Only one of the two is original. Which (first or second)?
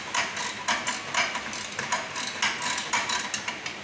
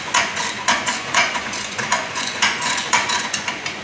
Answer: first